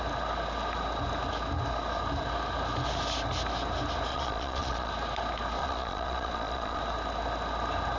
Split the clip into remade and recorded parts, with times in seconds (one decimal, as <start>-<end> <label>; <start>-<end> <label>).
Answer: 0.0-4.1 recorded; 4.1-4.9 remade; 4.9-5.6 recorded; 5.6-6.8 remade; 6.8-8.0 recorded